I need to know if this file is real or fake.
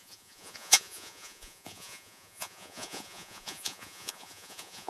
fake